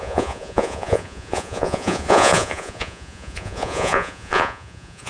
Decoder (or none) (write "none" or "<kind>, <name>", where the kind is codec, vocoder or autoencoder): vocoder, Vocos